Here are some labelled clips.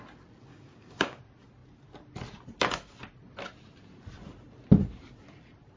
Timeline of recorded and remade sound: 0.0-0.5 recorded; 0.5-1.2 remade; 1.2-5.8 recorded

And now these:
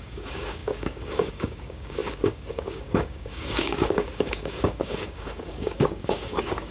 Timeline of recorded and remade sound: 0.0-6.7 remade